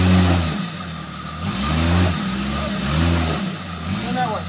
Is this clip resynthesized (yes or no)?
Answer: no